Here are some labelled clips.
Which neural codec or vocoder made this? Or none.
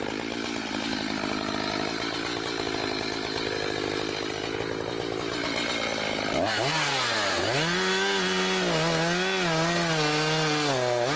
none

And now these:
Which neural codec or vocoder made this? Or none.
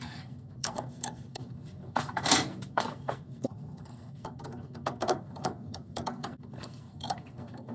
codec, SNAC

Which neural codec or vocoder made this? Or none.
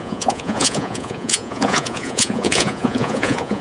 vocoder, Vocos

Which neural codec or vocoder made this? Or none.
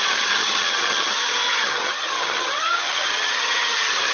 vocoder, HiFi-GAN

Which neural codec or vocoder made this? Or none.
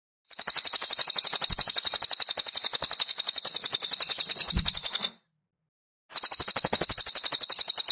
none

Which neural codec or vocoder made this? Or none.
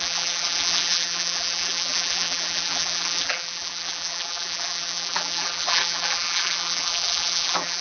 vocoder, BigVGAN v2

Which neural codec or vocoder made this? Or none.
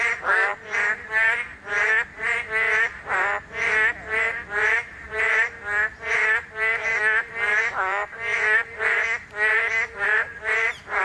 vocoder, BigVGAN v2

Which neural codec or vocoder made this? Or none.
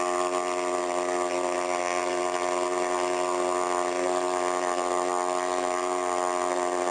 none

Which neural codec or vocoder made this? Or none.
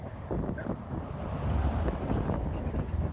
none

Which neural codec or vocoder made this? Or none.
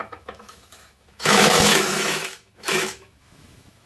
autoencoder, DAC-VAE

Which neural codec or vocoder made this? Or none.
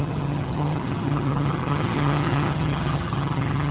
vocoder, HiFi-GAN